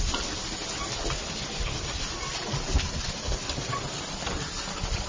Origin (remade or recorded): recorded